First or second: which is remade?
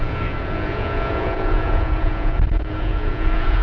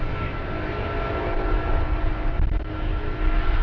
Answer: first